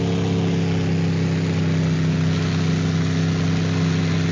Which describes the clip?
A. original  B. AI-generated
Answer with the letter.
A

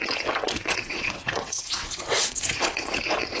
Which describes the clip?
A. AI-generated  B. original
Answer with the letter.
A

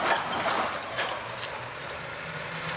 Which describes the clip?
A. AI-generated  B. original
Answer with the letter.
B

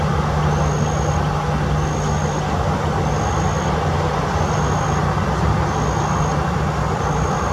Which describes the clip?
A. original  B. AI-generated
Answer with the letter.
A